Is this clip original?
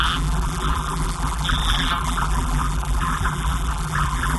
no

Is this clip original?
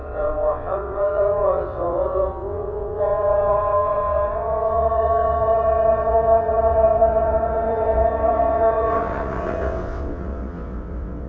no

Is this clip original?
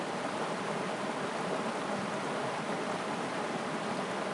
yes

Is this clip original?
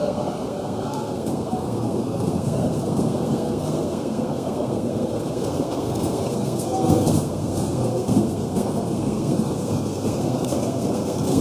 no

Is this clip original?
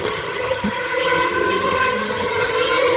no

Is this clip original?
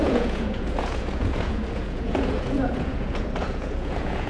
no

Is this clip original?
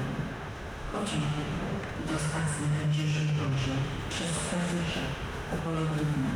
no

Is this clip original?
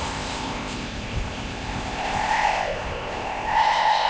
no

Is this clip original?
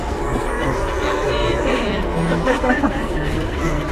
no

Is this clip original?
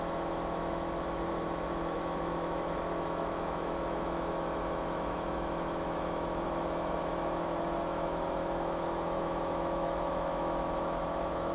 no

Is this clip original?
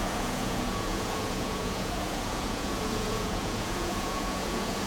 no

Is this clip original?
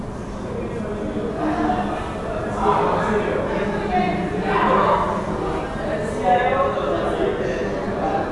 yes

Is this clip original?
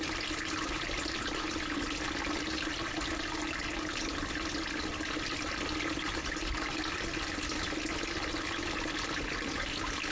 yes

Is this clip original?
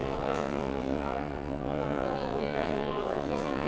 no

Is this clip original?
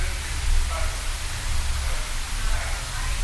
yes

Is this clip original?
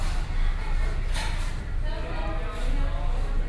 yes